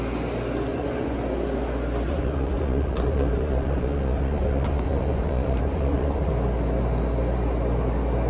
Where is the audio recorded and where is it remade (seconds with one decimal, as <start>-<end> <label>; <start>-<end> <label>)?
0.0-0.7 recorded; 0.7-1.2 remade; 1.2-2.1 recorded; 2.1-6.3 remade; 6.3-8.3 recorded